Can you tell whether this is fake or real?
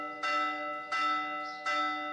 real